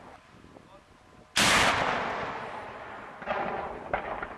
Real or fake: real